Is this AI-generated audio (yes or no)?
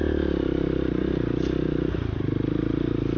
no